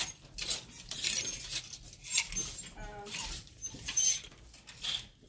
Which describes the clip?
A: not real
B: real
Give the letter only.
B